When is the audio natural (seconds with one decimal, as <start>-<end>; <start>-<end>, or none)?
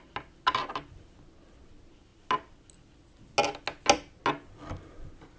0.0-5.4